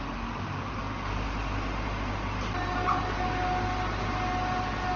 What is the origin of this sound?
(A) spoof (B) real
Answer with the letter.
B